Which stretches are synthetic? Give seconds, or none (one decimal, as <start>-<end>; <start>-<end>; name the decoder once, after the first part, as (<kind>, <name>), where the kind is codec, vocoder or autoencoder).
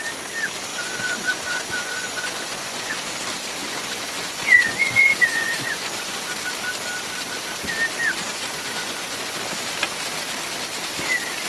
0.7-2.9 (vocoder, Vocos); 3.6-6.2; 8.2-9.4